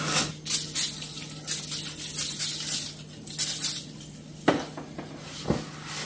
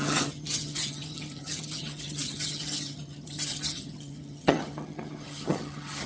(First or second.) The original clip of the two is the first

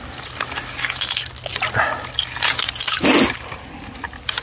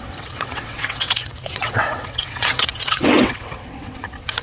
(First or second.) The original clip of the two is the first